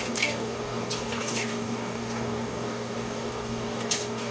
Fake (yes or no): yes